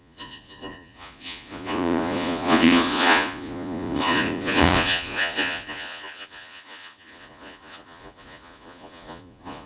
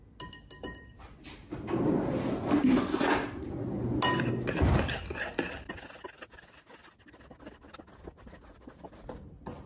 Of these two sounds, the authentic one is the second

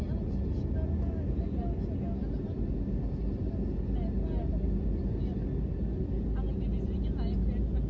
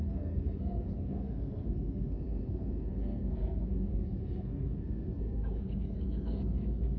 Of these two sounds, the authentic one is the first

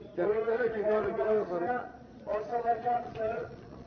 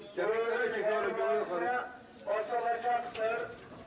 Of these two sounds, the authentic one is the second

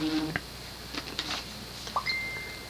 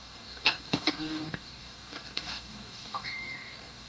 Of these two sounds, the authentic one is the first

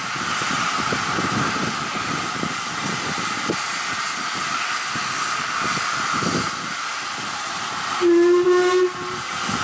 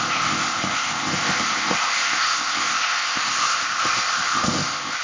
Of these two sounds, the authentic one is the first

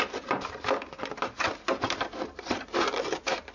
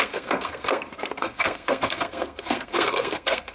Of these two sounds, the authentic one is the first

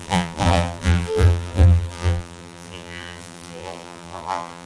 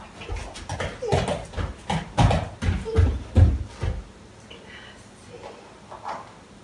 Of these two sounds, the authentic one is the second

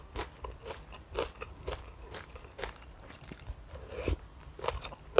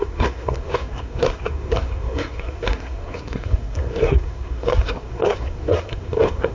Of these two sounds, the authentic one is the first